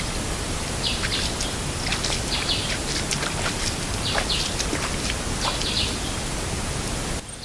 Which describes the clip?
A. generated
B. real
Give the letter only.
B